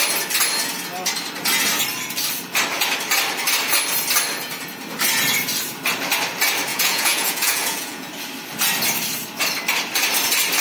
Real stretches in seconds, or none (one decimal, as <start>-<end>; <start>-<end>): 0.0-6.7; 8.1-10.6